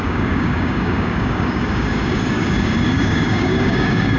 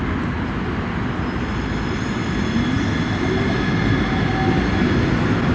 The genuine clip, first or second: second